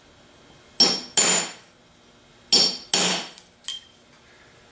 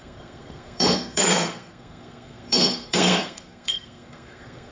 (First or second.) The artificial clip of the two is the second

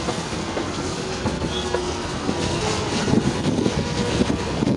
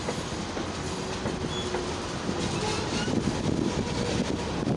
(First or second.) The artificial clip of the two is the first